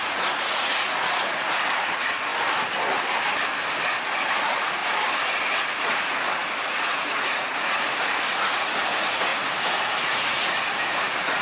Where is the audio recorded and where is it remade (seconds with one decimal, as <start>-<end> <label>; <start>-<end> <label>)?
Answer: 0.0-2.3 remade; 2.3-4.3 recorded; 4.3-4.8 remade; 4.8-5.5 recorded; 5.5-9.3 remade; 9.3-10.0 recorded; 10.0-11.4 remade